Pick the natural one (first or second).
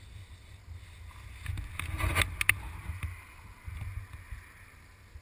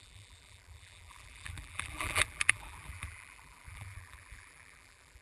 first